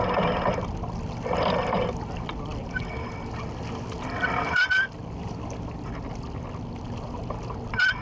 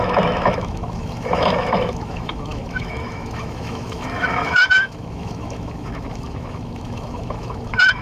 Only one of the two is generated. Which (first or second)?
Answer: second